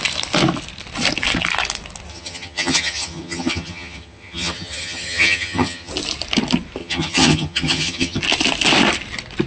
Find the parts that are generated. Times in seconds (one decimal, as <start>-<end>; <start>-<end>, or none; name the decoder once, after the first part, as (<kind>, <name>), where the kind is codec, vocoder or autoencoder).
2.1-5.9 (vocoder, HiFi-GAN); 6.8-8.2